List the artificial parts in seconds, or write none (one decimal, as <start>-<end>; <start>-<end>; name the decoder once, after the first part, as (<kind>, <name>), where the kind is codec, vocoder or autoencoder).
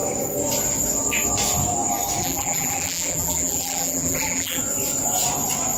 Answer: 2.2-4.6 (vocoder, BigVGAN v2)